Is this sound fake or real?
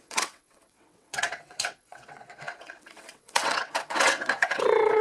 fake